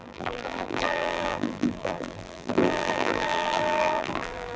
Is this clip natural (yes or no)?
no